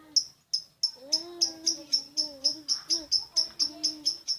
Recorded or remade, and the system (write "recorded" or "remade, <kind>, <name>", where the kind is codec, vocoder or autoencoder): recorded